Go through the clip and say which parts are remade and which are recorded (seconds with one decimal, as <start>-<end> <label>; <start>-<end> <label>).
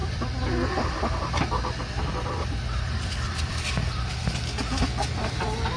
0.0-5.8 recorded